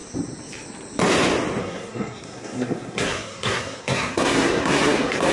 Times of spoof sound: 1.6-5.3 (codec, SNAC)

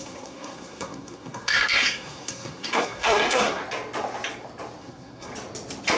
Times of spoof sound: 0.0-3.6 (codec, SNAC); 4.8-5.3

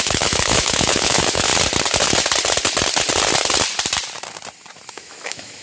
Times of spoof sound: 0.0-1.5 (autoencoder, DAC-VAE); 4.9-5.6

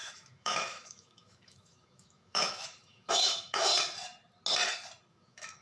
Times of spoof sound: 0.0-3.7 (autoencoder, DAC-VAE); 5.1-5.6

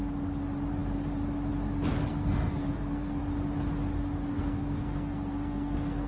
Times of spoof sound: 2.1-3.2 (codec, SNAC); 4.3-6.1

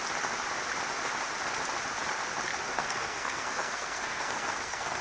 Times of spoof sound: 2.5-5.0 (codec, SNAC)

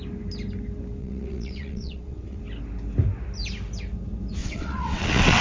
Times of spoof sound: 1.0-2.4 (vocoder, WaveNeXt); 4.4-5.4

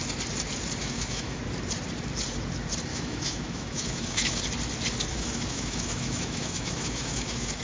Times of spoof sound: 0.8-1.4 (autoencoder, DAC-VAE); 2.9-4.4; 5.1-7.6